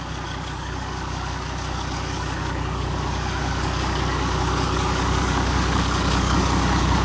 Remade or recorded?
remade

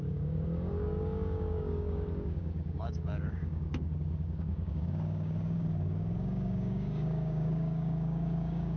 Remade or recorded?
remade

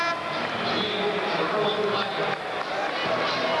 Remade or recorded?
recorded